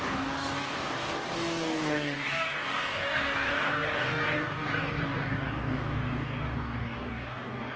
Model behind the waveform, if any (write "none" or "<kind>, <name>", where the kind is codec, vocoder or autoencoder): codec, DAC